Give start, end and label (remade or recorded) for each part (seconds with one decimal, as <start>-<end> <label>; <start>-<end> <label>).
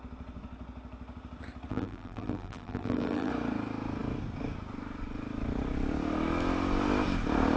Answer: 0.0-1.7 recorded; 1.7-3.3 remade; 3.3-7.6 recorded